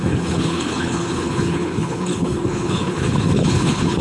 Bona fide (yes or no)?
no